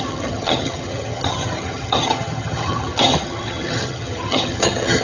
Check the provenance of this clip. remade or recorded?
remade